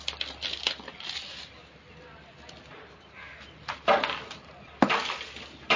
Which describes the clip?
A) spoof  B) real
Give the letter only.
B